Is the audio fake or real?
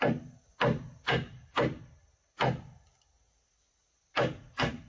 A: real